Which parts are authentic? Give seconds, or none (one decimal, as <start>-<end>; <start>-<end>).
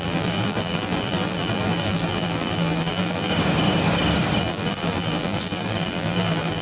3.3-4.4